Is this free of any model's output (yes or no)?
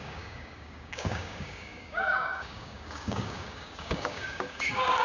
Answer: no